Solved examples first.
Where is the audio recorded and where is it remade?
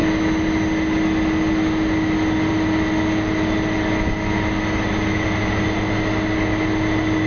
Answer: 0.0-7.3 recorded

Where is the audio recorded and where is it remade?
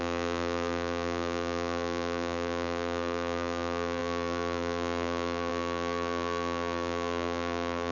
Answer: 0.0-7.9 remade